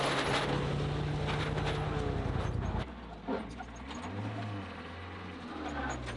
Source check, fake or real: real